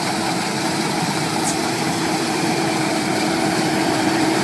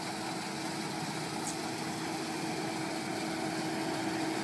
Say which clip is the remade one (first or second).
first